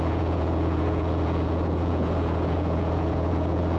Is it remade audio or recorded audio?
remade